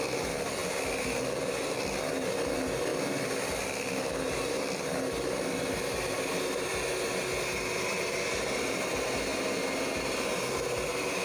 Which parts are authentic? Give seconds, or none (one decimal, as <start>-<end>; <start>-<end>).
0.0-11.2